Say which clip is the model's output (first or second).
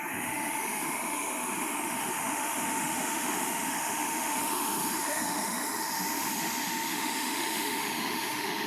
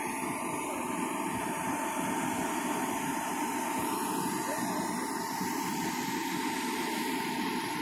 first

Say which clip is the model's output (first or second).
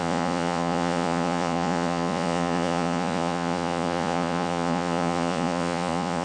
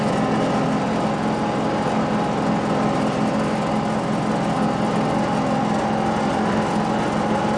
first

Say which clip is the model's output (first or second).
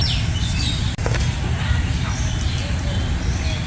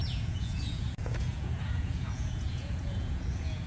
second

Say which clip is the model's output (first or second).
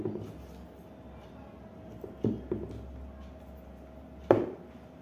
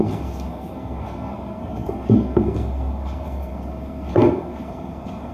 second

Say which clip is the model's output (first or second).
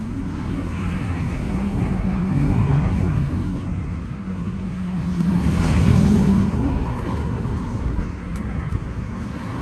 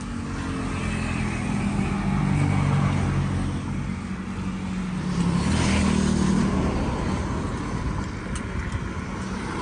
first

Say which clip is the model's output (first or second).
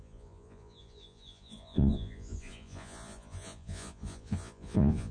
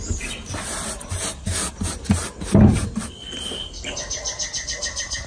first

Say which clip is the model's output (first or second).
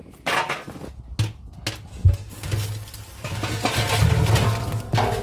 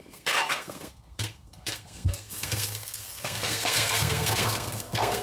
second